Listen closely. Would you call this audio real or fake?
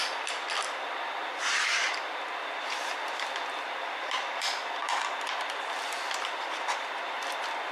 fake